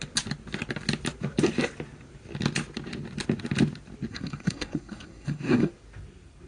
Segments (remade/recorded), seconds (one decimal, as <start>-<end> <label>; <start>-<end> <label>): 0.0-4.1 recorded; 4.1-5.7 remade; 5.7-6.5 recorded